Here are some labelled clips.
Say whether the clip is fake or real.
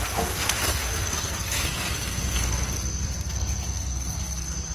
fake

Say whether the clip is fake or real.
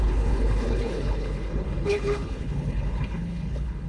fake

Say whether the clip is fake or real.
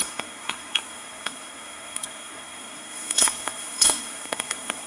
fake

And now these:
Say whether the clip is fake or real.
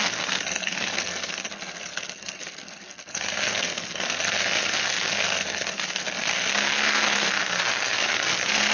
fake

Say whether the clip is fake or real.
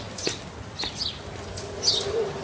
real